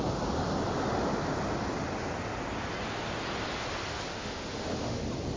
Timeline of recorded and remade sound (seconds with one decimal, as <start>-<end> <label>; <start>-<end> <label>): 0.0-4.1 recorded; 4.1-5.0 remade; 5.0-5.4 recorded